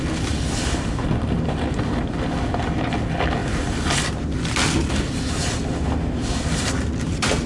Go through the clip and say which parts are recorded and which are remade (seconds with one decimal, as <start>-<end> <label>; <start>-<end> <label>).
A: 0.0-7.5 recorded